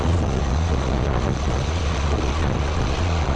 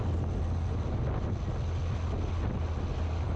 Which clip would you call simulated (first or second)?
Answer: first